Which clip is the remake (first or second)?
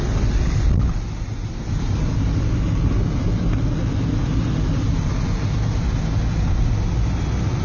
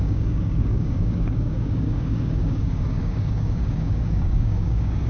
second